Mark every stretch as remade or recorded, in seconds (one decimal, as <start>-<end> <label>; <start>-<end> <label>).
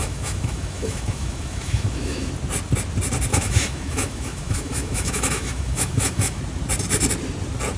0.0-2.3 remade; 2.3-3.3 recorded; 3.3-6.4 remade; 6.4-7.8 recorded